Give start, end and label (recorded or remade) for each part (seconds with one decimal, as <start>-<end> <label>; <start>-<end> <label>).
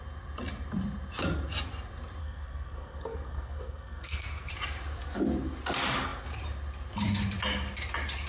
0.0-2.2 recorded; 2.2-4.5 remade; 4.5-8.3 recorded